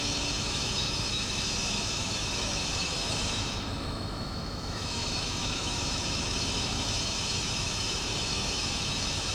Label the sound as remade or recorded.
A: remade